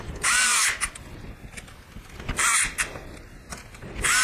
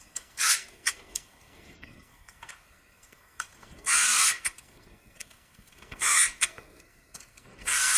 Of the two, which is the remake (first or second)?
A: second